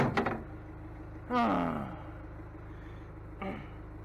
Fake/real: real